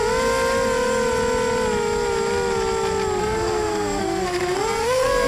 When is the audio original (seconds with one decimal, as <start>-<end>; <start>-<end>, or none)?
0.0-3.2